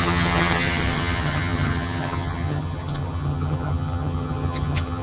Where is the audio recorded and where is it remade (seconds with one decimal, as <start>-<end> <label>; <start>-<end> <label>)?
0.0-5.0 remade